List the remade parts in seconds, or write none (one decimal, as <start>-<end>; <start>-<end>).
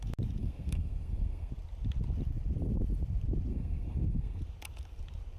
0.4-1.5; 3.5-4.4